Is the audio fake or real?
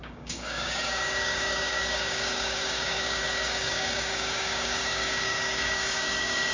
fake